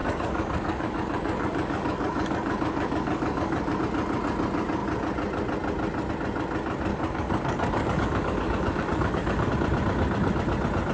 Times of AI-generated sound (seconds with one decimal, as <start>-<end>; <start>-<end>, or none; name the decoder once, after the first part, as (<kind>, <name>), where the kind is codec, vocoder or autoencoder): 0.0-3.8 (codec, DAC); 6.9-9.5